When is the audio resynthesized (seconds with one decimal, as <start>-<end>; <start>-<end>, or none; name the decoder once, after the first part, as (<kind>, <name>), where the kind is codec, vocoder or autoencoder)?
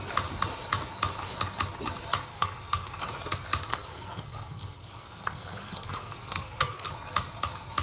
2.3-3.0 (codec, SNAC); 3.7-6.9